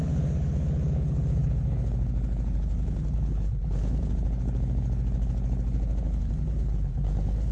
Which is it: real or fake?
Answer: fake